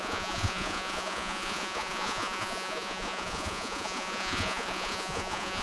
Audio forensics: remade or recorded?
remade